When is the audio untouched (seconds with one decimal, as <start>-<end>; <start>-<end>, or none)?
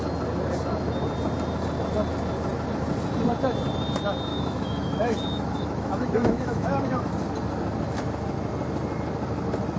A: 0.0-4.3; 7.0-9.8